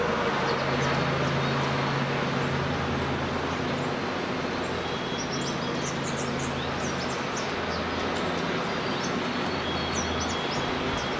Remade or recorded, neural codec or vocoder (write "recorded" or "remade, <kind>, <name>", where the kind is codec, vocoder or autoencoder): recorded